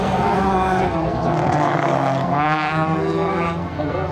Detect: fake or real fake